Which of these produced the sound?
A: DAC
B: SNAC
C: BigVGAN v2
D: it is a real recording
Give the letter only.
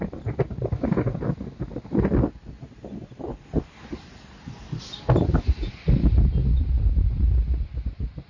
D